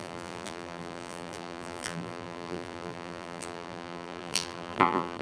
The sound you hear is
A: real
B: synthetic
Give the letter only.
B